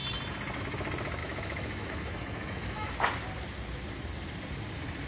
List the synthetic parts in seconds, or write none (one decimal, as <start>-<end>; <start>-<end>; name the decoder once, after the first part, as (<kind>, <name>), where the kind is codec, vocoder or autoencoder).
1.2-2.9 (autoencoder, DAC-VAE)